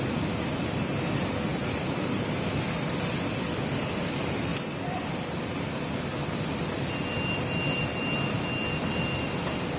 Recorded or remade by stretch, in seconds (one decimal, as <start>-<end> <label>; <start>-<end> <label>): 0.0-1.5 recorded; 1.5-2.3 remade; 2.3-9.8 recorded